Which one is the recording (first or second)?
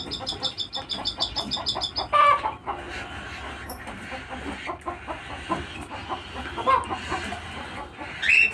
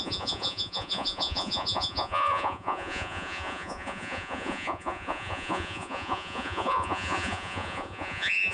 first